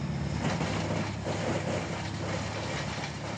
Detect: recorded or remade recorded